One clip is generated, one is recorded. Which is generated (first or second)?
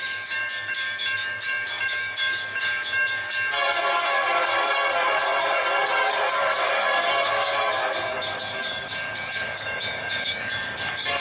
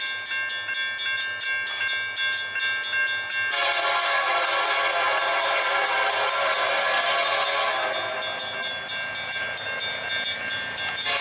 first